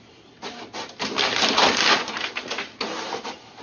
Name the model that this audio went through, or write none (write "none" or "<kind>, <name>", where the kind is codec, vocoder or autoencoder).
none